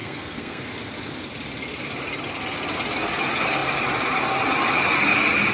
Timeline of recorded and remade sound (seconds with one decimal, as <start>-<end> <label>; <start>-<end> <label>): 0.0-0.6 remade; 0.6-5.5 recorded